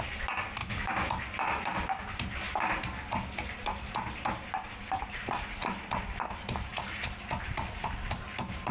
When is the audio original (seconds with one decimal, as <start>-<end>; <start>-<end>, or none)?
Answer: 0.0-0.6; 1.1-8.7